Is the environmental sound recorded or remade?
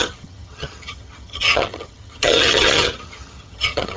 remade